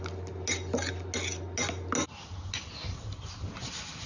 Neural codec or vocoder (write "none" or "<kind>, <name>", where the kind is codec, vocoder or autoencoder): none